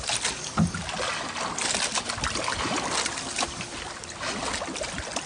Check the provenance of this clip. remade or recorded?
recorded